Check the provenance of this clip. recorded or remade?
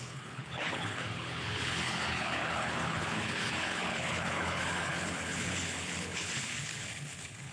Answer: remade